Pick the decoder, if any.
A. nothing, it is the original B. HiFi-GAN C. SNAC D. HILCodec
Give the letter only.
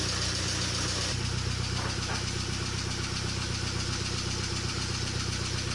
A